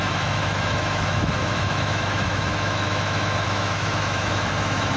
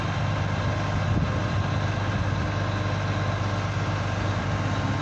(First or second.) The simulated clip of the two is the first